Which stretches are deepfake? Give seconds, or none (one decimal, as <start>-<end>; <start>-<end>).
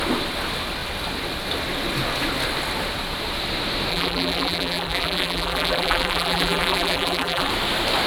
3.9-7.5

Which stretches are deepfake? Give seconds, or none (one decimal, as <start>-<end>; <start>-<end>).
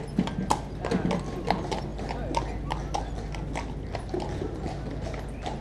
none